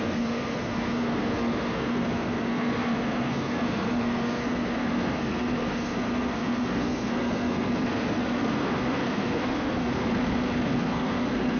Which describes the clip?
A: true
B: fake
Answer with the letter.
B